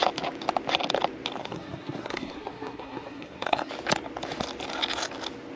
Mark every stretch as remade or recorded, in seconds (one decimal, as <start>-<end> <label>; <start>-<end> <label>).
0.0-1.4 recorded; 1.4-3.7 remade; 3.7-5.6 recorded